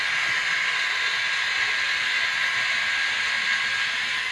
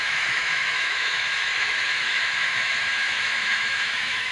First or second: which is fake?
second